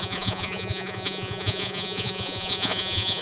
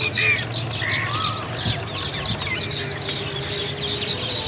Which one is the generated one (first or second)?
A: first